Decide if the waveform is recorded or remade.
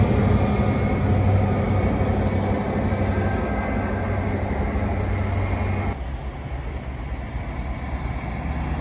recorded